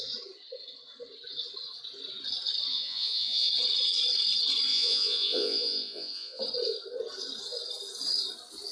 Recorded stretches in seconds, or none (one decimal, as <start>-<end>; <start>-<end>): 0.0-2.7; 3.5-4.7; 6.4-8.7